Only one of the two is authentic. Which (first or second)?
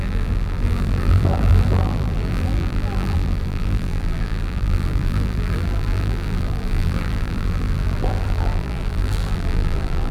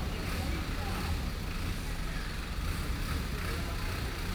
second